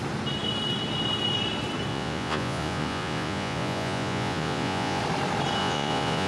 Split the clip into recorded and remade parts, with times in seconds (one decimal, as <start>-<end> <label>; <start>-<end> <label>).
0.0-1.9 recorded; 1.9-5.0 remade; 5.0-5.6 recorded; 5.6-6.3 remade